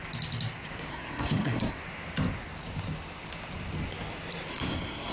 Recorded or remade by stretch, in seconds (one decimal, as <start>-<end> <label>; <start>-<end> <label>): 0.0-0.9 recorded; 0.9-1.8 remade; 1.8-4.5 recorded; 4.5-5.1 remade